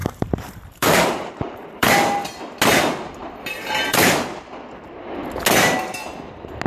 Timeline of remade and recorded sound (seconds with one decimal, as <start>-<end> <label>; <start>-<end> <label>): 0.0-1.9 remade; 1.9-3.2 recorded; 3.2-4.0 remade; 4.0-6.7 recorded